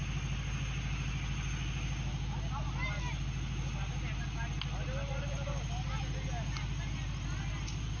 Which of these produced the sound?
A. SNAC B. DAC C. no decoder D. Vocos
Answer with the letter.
C